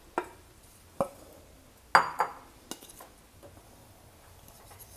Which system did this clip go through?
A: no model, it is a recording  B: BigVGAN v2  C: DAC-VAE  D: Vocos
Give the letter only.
A